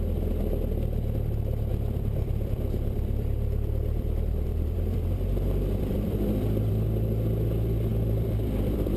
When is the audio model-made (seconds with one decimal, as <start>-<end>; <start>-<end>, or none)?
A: 1.7-6.7; 7.9-9.0